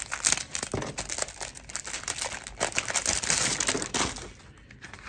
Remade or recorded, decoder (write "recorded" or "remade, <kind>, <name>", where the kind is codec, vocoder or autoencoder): recorded